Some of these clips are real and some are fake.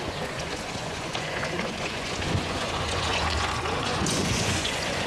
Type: fake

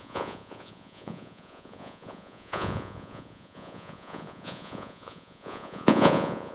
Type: fake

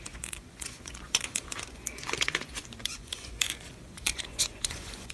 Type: fake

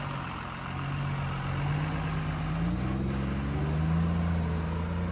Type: real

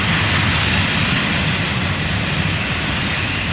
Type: real